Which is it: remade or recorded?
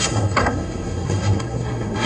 remade